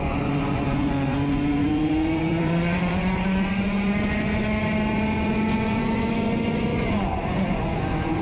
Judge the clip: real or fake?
fake